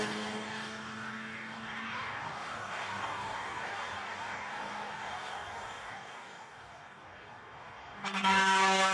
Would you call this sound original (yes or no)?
no